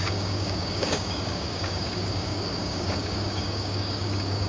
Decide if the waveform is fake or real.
fake